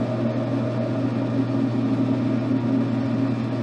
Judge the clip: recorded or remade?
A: recorded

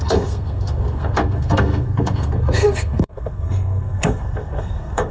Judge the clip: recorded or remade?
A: remade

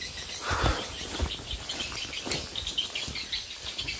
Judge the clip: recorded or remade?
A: recorded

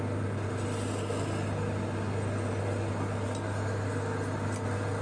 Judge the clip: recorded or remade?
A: recorded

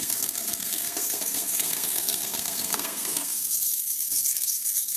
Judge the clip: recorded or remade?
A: remade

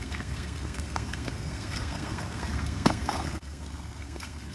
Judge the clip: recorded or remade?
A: remade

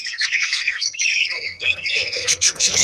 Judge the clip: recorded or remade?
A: remade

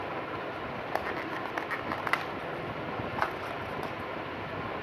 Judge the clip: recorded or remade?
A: recorded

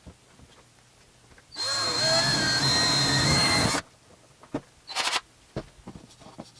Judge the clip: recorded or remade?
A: recorded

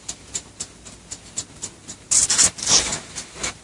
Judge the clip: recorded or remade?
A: recorded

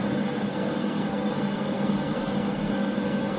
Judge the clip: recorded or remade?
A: remade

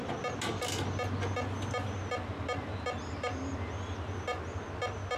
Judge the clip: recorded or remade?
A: recorded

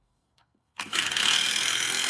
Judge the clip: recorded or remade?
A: remade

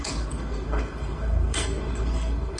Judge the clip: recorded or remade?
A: remade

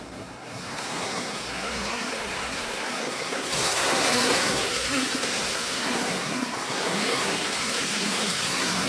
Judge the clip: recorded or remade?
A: remade